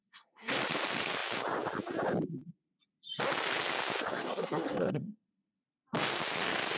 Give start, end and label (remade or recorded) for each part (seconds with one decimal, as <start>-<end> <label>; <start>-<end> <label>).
0.0-0.5 remade; 0.5-4.1 recorded; 4.1-5.6 remade; 5.6-6.8 recorded

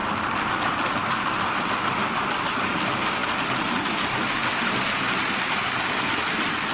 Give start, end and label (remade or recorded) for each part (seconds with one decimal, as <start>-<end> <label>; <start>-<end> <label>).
0.0-6.7 recorded

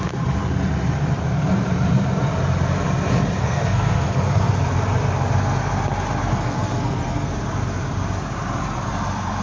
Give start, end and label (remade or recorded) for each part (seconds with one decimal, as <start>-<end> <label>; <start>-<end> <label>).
0.0-3.4 recorded; 3.4-4.5 remade; 4.5-6.3 recorded; 6.3-7.3 remade; 7.3-9.4 recorded

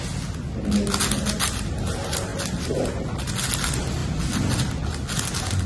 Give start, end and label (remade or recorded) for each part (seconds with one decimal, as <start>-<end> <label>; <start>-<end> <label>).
0.0-5.7 recorded

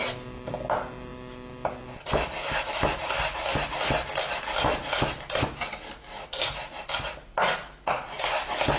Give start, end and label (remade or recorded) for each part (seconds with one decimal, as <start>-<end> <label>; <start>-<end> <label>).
0.0-8.8 recorded